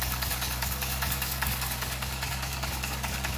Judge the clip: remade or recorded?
remade